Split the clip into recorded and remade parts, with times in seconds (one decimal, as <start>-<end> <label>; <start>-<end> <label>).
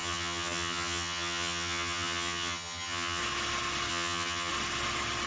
0.0-3.2 remade; 3.2-3.9 recorded; 3.9-4.5 remade; 4.5-5.3 recorded